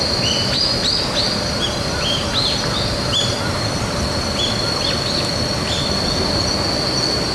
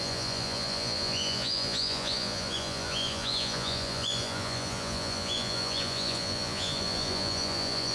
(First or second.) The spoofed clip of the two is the second